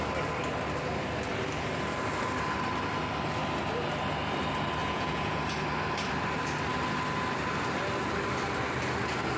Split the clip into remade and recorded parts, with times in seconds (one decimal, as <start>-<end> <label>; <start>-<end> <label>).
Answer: 0.0-4.8 recorded; 4.8-5.4 remade; 5.4-9.4 recorded